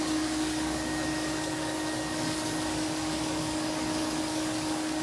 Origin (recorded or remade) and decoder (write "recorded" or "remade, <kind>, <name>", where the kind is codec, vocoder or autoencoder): remade, codec, DAC